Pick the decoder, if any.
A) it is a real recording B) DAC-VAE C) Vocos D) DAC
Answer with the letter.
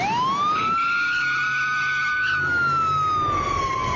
A